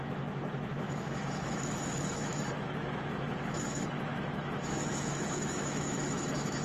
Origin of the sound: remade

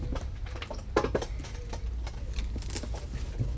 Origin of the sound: recorded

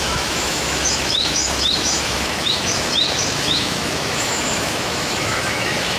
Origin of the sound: remade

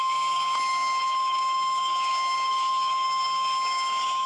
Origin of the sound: remade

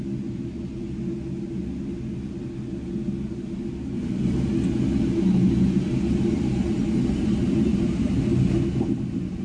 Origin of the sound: recorded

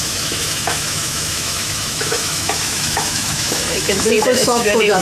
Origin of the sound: remade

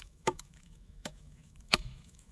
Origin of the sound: remade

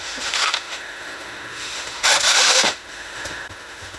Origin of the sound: remade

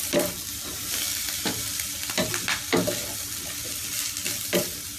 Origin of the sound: recorded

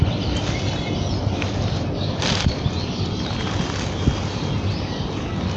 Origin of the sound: recorded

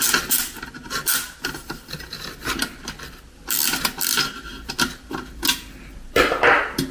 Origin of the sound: recorded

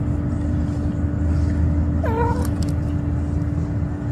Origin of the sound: recorded